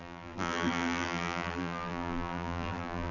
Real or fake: fake